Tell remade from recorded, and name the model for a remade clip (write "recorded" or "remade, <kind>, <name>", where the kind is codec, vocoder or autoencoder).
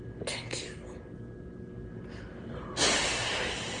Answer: recorded